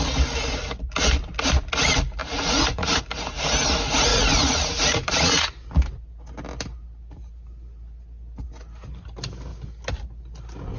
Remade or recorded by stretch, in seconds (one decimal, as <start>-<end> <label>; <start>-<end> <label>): 0.0-2.2 recorded; 2.2-3.0 remade; 3.0-4.1 recorded; 4.1-5.5 remade; 5.5-10.8 recorded